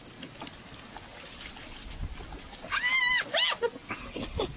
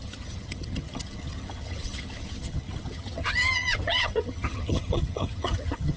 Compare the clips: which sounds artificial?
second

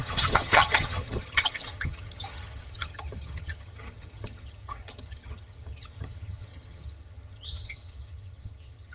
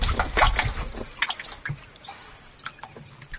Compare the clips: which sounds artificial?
first